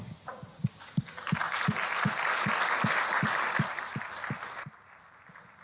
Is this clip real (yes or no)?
yes